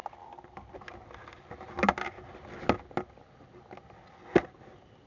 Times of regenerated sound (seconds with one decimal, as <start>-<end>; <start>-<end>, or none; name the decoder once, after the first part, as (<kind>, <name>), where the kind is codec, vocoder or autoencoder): none